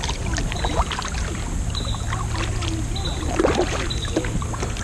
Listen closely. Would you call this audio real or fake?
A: real